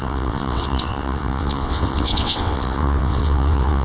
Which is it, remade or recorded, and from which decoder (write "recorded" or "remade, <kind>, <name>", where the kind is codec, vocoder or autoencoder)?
remade, vocoder, WaveNeXt